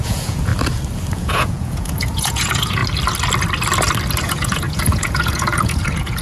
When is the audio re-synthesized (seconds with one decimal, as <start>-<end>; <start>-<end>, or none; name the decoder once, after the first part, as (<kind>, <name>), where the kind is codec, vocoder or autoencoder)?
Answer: 0.0-0.5 (vocoder, Vocos); 1.1-2.8; 4.2-6.2